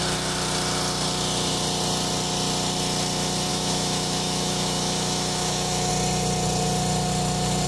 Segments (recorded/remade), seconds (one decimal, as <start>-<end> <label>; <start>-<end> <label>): 0.0-3.5 recorded; 3.5-5.9 remade; 5.9-7.7 recorded

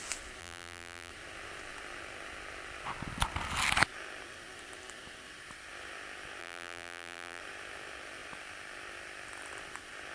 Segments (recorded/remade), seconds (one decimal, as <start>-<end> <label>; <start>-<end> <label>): 0.0-0.4 recorded; 0.4-1.1 remade; 1.1-6.4 recorded; 6.4-7.4 remade; 7.4-10.1 recorded

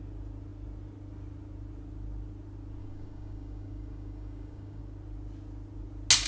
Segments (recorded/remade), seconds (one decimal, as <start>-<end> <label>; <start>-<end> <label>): 0.0-2.8 recorded; 2.8-4.8 remade; 4.8-6.3 recorded

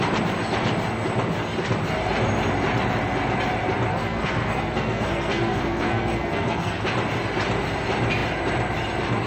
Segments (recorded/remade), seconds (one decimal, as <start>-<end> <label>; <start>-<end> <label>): 0.0-3.9 recorded; 3.9-6.8 remade; 6.8-9.3 recorded

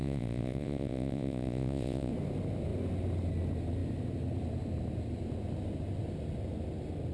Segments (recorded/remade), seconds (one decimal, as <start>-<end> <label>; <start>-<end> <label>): 0.0-2.1 remade; 2.1-7.1 recorded